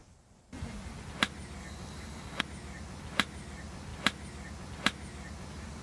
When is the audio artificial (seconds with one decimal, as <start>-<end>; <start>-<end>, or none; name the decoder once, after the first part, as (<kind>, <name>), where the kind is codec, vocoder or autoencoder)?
1.6-2.4 (codec, DAC)